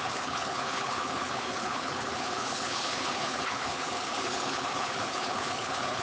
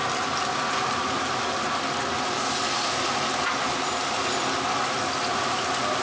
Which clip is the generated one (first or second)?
first